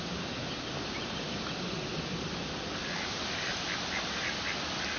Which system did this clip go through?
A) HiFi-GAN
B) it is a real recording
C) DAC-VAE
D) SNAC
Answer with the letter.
B